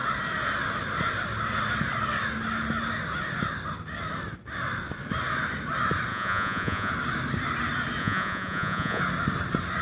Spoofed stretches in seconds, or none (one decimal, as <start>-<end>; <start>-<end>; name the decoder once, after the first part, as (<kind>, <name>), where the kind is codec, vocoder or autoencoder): 6.1-6.9 (vocoder, Vocos); 8.0-9.0